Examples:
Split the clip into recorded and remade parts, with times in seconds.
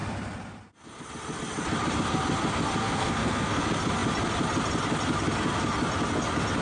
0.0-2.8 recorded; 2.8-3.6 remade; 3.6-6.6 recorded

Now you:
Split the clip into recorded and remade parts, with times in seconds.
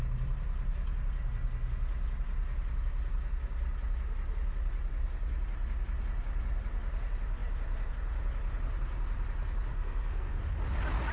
0.0-9.7 recorded; 9.7-10.4 remade; 10.4-11.1 recorded